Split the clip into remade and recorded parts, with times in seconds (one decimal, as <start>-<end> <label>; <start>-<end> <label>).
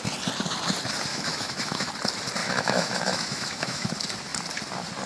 0.0-1.1 recorded; 1.1-1.9 remade; 1.9-2.4 recorded; 2.4-3.9 remade; 3.9-5.1 recorded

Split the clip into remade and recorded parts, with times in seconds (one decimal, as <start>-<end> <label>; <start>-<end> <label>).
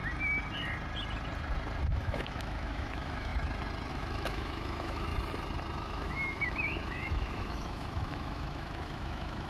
0.0-1.9 recorded; 1.9-3.3 remade; 3.3-3.9 recorded; 3.9-5.1 remade; 5.1-5.8 recorded; 5.8-9.5 remade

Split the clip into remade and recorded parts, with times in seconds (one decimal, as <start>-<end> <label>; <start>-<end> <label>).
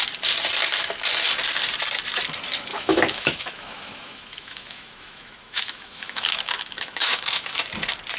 0.0-2.7 recorded; 2.7-7.6 remade; 7.6-8.2 recorded